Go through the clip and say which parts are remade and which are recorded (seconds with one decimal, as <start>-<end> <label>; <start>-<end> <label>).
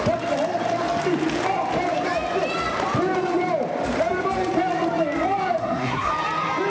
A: 0.0-5.6 recorded; 5.6-6.1 remade; 6.1-6.7 recorded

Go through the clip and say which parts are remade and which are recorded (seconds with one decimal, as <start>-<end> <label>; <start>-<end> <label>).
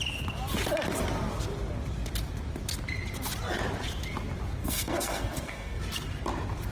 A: 0.0-4.6 recorded; 4.6-5.8 remade; 5.8-6.7 recorded